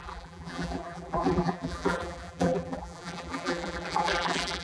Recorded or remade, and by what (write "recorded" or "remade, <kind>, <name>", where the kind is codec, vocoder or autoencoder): remade, vocoder, BigVGAN v2